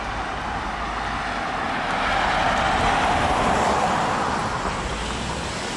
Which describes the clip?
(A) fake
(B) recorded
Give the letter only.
B